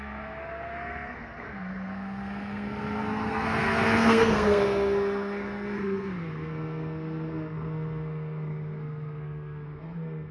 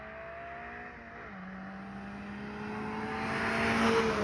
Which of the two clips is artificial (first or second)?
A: first